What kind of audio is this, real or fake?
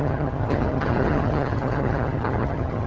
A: fake